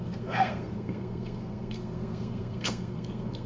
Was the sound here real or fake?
fake